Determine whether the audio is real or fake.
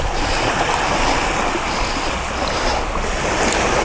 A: real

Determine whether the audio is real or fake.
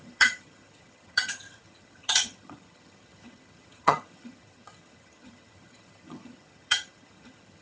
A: fake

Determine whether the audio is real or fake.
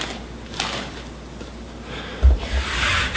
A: real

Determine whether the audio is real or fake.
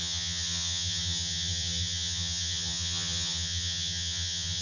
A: fake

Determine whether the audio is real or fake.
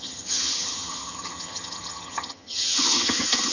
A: fake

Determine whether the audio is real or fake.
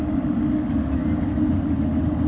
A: real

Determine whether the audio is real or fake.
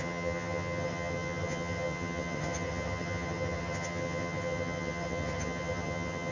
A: fake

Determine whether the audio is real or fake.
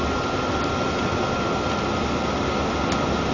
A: real